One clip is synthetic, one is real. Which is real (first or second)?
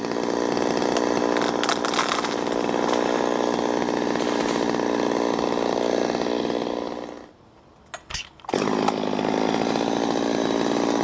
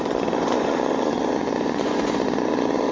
first